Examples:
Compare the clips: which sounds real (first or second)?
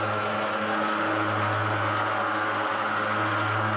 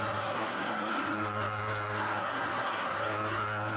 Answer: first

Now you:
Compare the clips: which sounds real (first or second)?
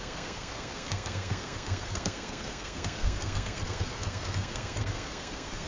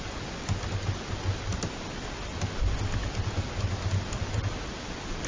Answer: second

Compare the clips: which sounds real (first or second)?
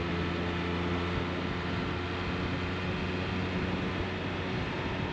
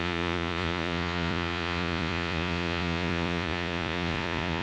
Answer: first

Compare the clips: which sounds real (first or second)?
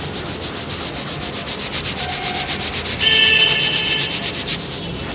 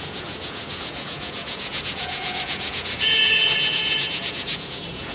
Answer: first